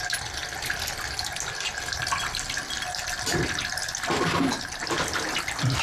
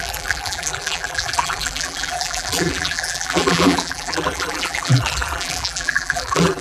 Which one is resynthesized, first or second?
second